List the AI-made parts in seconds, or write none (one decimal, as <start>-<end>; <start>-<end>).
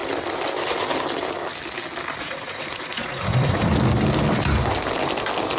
2.2-3.7